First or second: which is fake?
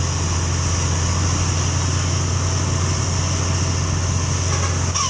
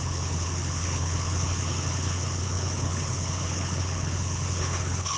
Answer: second